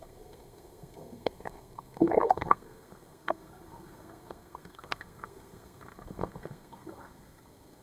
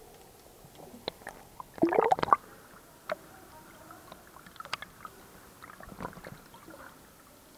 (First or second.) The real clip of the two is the second